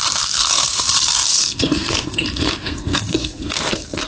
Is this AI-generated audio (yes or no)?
yes